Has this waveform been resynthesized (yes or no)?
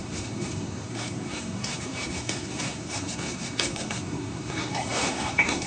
yes